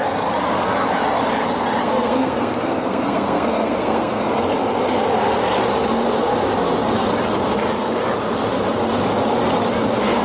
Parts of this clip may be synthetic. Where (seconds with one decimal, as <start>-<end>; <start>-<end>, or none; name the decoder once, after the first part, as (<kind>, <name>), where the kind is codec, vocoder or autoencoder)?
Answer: 1.8-4.2 (codec, SNAC)